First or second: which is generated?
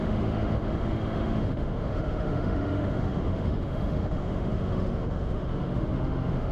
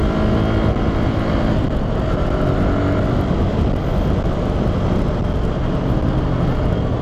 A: first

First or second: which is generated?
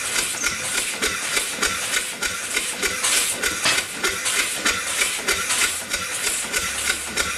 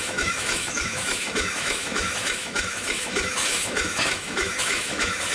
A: second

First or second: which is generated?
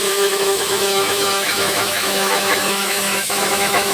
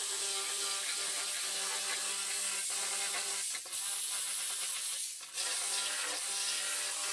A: first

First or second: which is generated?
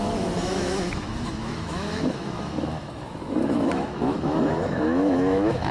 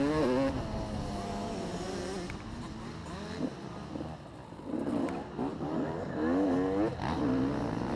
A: first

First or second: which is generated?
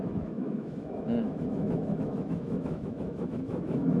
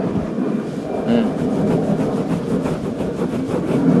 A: first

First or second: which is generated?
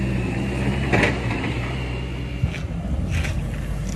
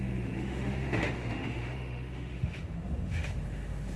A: second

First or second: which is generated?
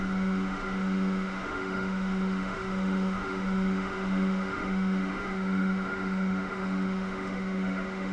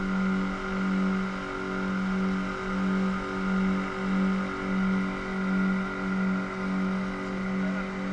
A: first